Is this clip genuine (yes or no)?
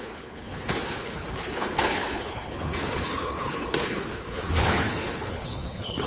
no